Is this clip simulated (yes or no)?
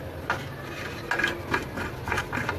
no